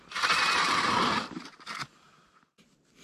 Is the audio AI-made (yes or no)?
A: no